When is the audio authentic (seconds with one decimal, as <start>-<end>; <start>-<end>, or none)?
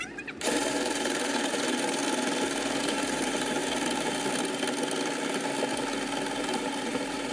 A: 2.0-2.8; 3.6-6.4